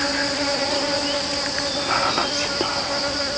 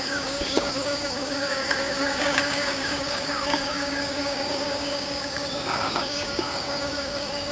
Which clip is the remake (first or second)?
second